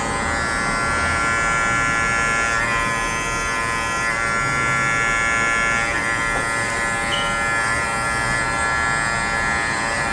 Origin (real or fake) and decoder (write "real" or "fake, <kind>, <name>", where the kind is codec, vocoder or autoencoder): real